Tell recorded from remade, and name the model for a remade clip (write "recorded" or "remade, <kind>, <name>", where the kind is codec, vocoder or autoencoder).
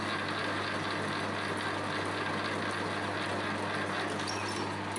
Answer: recorded